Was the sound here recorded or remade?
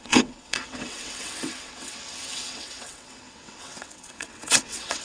remade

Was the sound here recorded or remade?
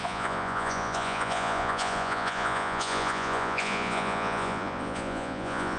remade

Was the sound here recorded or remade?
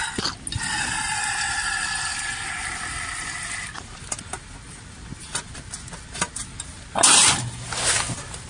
recorded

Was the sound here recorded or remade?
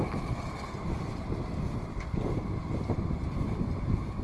recorded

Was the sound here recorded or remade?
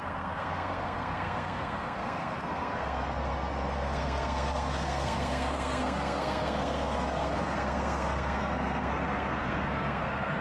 remade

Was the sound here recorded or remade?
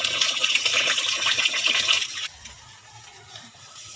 remade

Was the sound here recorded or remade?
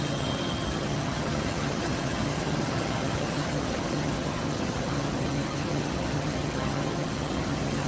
remade